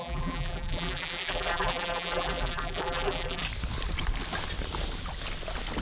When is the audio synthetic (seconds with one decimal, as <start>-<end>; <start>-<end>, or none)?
0.0-3.4